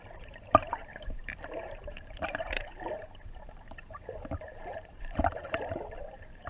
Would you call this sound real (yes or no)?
no